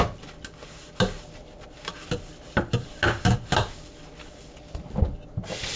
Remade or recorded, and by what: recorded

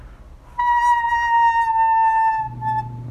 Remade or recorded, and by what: recorded